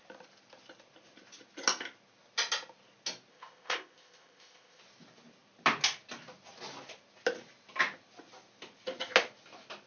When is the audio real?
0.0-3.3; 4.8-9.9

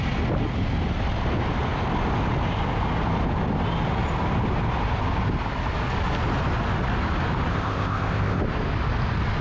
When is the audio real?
0.0-7.5; 8.4-9.4

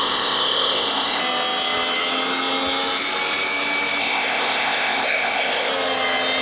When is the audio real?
1.2-4.0; 5.7-6.4